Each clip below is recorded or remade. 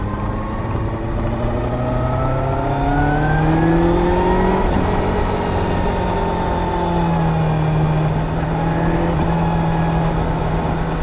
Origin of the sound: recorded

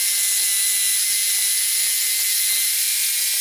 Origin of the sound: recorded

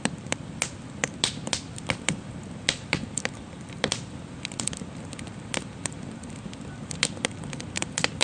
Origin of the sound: recorded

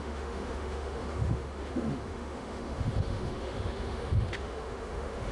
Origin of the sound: remade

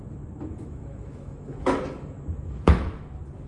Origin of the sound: remade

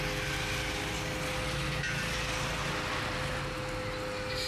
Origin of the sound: recorded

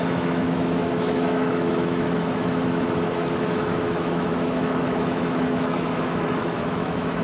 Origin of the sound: remade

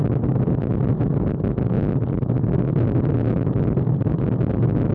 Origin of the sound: recorded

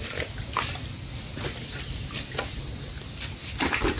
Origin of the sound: recorded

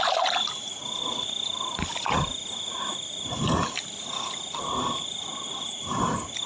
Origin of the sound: recorded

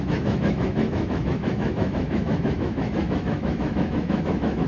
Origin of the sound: remade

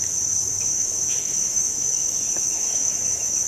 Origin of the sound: remade